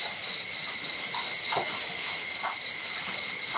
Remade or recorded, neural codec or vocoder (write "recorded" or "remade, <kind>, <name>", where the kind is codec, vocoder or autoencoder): recorded